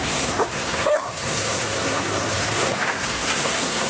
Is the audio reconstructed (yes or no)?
yes